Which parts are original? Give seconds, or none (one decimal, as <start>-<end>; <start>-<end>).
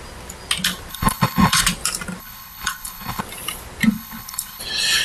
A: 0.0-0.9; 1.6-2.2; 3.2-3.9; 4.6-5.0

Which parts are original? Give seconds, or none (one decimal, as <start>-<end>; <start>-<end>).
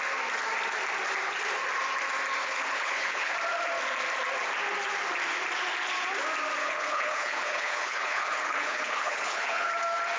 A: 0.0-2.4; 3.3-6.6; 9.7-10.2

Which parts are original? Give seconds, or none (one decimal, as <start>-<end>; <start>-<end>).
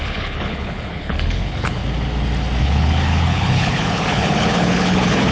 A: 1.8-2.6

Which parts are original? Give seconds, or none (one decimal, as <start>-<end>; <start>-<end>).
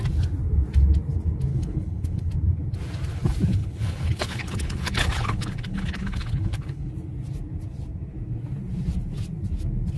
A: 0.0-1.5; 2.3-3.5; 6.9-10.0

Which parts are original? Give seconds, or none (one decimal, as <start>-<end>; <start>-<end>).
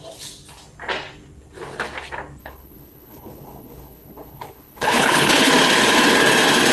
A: 0.0-2.4; 5.5-6.7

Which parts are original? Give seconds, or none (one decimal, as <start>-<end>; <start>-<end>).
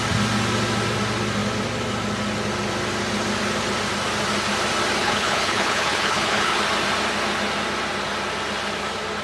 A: 0.0-5.0; 6.6-9.2